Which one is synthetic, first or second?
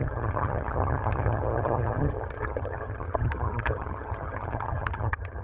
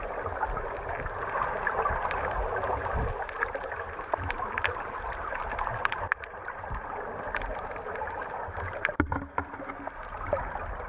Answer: first